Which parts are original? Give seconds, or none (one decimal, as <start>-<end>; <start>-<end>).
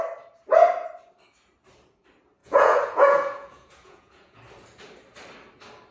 0.0-2.4; 4.4-5.9